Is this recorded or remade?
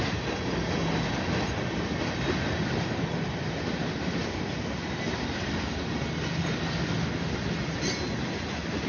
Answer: recorded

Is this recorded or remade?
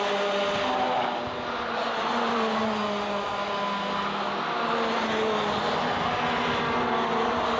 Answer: recorded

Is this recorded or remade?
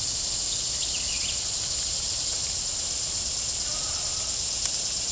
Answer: recorded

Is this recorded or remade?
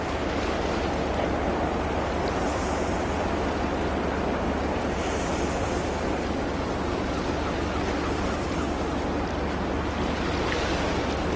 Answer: recorded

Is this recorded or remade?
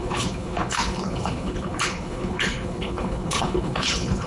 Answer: remade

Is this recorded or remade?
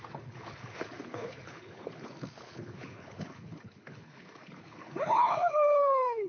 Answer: remade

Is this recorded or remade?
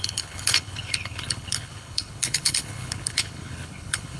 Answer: remade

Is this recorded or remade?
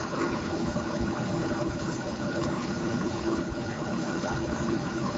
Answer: remade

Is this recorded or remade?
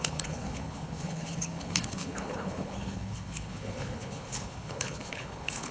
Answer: remade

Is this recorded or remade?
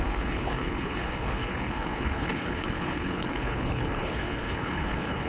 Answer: remade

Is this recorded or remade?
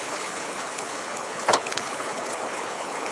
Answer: remade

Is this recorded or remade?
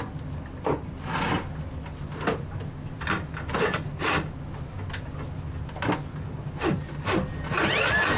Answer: recorded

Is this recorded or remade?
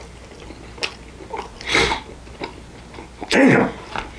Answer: recorded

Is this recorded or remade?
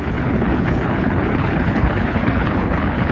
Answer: remade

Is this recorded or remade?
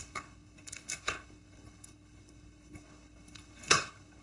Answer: remade